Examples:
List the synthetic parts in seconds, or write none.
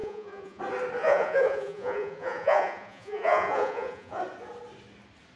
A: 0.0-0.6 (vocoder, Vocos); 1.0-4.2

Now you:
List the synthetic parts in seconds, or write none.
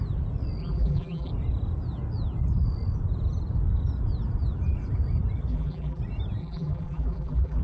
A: 0.6-1.3 (vocoder, BigVGAN v2); 5.5-6.0; 6.4-7.6